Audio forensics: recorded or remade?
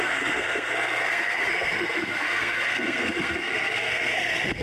remade